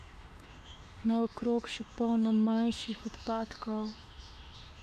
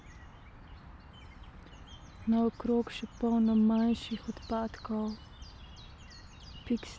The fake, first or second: first